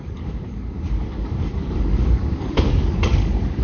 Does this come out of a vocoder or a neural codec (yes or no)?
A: yes